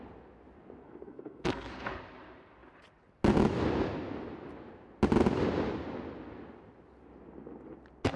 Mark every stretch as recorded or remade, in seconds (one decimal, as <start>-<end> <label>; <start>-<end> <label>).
0.0-0.8 recorded; 0.8-1.9 remade; 1.9-8.2 recorded